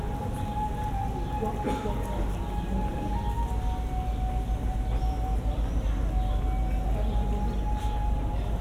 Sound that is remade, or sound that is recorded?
recorded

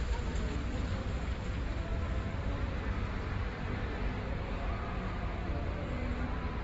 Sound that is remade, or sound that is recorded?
recorded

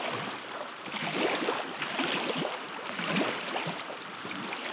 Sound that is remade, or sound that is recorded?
recorded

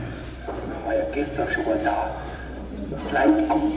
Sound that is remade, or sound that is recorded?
remade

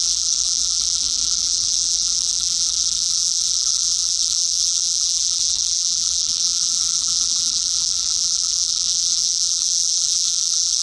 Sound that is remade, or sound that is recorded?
remade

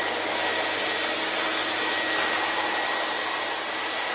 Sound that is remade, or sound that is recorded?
recorded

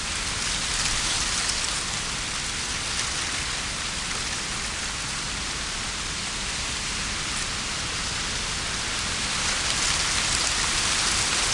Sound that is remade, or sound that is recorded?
recorded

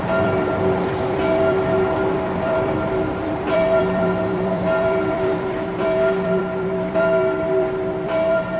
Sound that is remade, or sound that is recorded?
remade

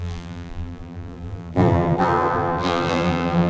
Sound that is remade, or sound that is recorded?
remade